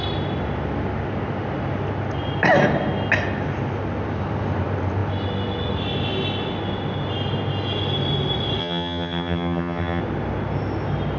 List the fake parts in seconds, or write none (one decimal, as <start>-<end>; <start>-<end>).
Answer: 8.6-10.0